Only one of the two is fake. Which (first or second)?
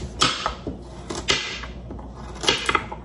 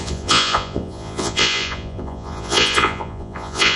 second